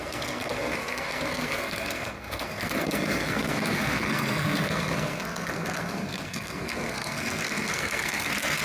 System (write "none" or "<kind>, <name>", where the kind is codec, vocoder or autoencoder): codec, SNAC